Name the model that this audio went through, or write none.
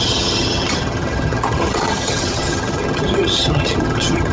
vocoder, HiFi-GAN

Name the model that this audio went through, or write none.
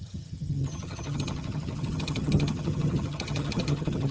vocoder, HiFi-GAN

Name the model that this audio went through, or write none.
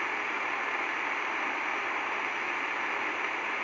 none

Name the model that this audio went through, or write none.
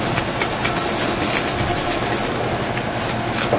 none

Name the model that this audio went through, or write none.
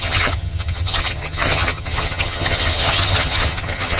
vocoder, HiFi-GAN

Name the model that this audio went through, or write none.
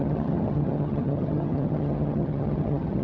vocoder, HiFi-GAN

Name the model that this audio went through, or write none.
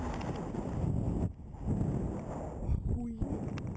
none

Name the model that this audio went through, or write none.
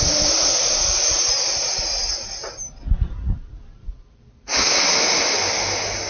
none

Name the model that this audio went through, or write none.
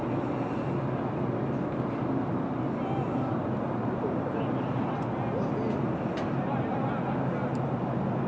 none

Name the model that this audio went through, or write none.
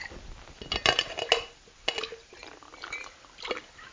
none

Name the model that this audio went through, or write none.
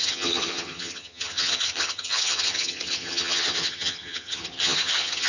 vocoder, HiFi-GAN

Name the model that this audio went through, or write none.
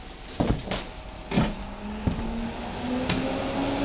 none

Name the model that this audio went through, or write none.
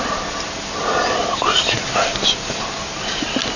none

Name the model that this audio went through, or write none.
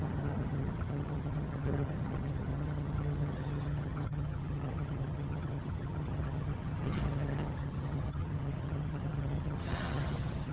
vocoder, HiFi-GAN